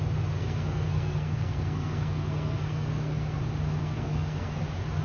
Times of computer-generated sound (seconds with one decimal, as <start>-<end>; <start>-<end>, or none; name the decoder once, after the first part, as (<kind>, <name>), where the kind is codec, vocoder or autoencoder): 0.4-3.4 (codec, SNAC); 3.8-4.6